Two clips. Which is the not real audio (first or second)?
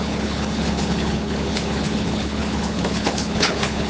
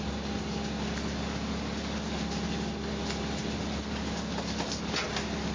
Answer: first